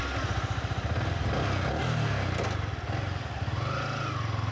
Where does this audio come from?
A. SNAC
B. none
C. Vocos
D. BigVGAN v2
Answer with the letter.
B